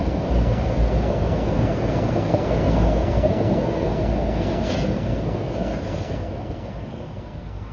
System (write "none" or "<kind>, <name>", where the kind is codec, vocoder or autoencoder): codec, SNAC